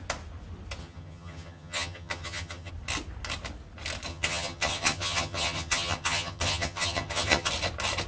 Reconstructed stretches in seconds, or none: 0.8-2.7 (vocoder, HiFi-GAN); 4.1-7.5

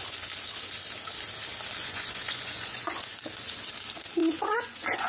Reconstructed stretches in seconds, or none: 1.8-3.0 (vocoder, Vocos); 4.2-5.1